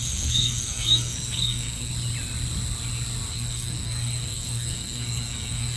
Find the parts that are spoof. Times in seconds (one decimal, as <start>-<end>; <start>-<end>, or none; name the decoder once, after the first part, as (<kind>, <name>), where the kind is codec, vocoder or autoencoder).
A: 0.0-1.9 (codec, SNAC); 3.3-5.8